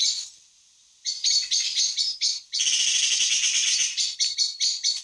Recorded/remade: recorded